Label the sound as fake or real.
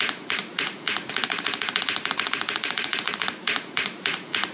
fake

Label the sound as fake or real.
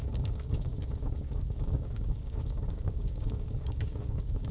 fake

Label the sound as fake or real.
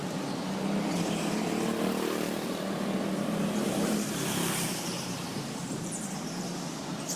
fake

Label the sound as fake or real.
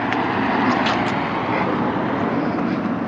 real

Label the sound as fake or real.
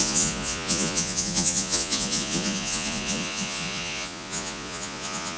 fake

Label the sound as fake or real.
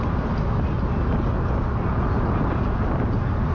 real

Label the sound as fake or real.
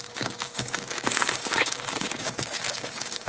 fake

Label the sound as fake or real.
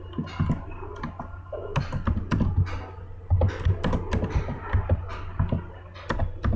real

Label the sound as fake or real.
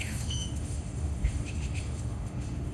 fake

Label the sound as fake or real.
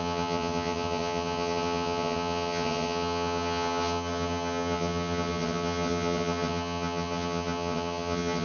fake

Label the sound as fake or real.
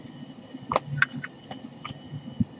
real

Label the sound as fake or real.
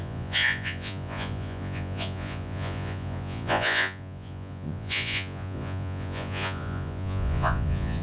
fake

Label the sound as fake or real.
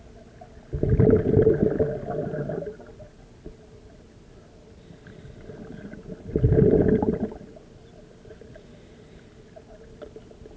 real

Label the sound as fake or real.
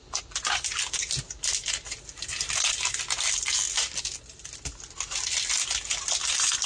real